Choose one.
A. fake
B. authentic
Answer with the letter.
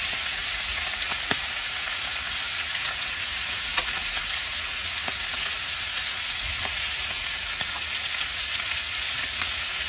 A